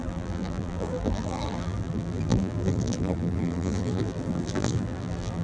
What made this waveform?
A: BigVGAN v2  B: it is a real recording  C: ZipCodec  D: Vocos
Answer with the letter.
A